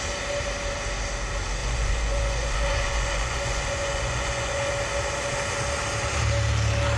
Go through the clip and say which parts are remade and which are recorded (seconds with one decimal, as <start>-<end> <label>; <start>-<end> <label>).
0.0-1.6 recorded; 1.6-4.7 remade; 4.7-7.0 recorded

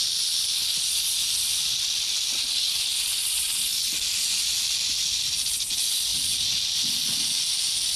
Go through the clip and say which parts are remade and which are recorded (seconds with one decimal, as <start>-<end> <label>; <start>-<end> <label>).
0.0-8.0 recorded

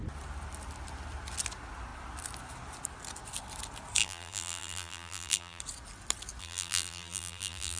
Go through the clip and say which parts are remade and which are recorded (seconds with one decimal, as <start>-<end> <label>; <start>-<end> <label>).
0.0-4.0 recorded; 4.0-5.6 remade; 5.6-6.4 recorded; 6.4-7.8 remade

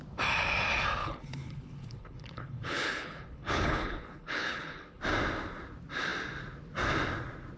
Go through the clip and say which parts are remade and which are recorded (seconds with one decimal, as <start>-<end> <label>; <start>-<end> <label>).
0.0-1.0 recorded; 1.0-5.0 remade; 5.0-7.6 recorded

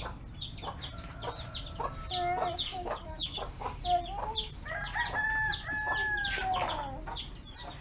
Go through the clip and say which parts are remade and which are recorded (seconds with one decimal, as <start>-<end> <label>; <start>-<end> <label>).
0.0-2.7 recorded; 2.7-3.8 remade; 3.8-7.8 recorded